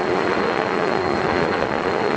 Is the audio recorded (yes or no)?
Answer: no